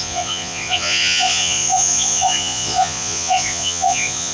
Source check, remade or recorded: remade